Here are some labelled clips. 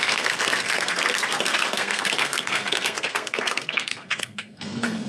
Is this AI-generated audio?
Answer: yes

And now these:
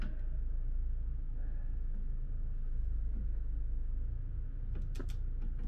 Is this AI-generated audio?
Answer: no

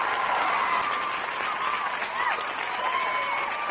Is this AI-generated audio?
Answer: no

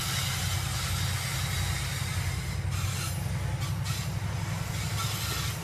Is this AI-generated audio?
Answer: no